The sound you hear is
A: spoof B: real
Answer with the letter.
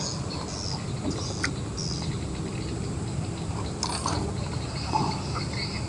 B